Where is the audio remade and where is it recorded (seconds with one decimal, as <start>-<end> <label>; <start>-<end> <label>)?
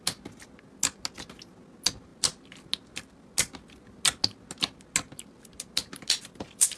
0.0-6.8 recorded